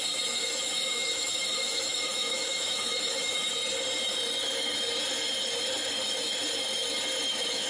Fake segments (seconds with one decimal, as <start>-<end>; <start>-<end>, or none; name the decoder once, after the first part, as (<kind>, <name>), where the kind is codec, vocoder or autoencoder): 0.0-3.6 (autoencoder, DAC-VAE); 7.3-7.7